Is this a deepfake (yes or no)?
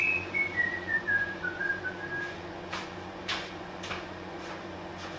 yes